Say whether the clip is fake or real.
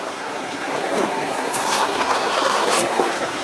fake